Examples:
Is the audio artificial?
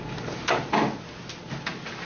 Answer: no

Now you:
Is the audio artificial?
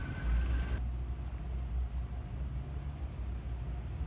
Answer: no